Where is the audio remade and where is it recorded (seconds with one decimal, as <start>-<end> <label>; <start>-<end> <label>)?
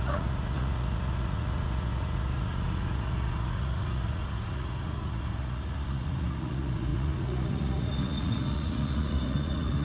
0.0-9.8 remade